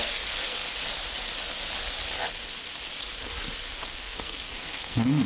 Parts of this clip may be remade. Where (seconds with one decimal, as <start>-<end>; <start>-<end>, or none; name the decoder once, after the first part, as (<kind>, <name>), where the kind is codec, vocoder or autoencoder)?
0.0-0.6 (codec, SNAC); 3.8-5.3